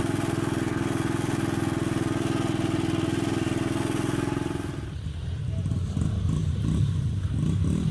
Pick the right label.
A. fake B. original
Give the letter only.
B